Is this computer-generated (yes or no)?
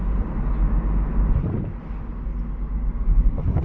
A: no